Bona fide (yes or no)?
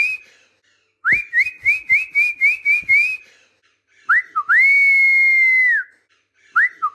yes